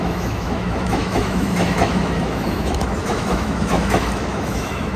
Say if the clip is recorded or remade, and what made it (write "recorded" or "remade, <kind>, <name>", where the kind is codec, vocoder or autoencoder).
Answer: remade, autoencoder, DAC-VAE